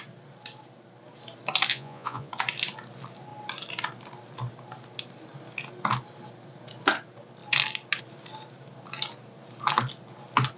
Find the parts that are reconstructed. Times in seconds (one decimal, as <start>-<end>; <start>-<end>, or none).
1.7-2.3